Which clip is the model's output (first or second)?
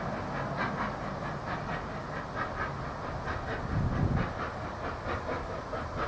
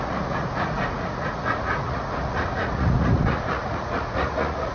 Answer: second